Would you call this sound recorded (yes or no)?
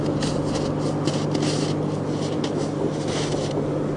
yes